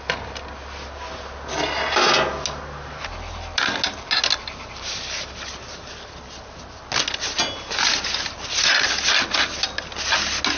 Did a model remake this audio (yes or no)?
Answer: no